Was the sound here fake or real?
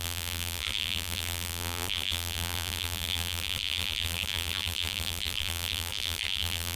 fake